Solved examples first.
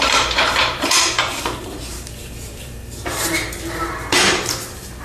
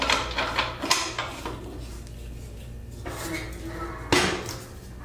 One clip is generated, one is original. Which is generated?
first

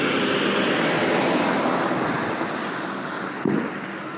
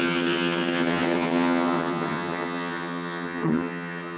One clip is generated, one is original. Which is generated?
second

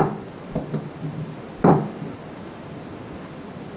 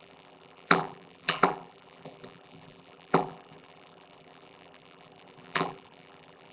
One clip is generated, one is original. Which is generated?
second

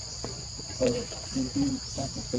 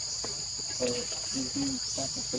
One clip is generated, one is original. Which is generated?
first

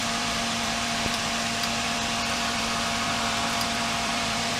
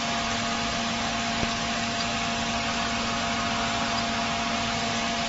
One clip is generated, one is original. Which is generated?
first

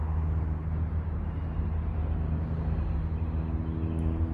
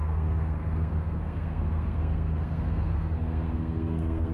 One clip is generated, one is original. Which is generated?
second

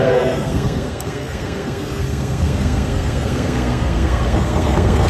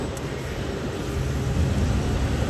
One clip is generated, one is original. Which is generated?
first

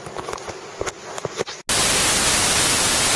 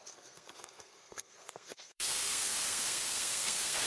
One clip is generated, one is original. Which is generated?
second